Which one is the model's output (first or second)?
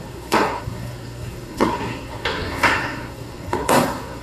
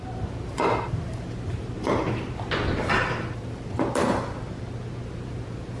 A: first